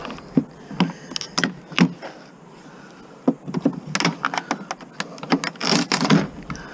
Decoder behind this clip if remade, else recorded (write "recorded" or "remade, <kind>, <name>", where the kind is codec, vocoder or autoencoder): recorded